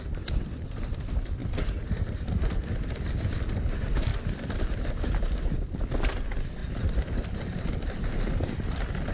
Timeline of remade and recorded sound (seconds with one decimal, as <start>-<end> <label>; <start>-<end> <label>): 0.0-9.1 remade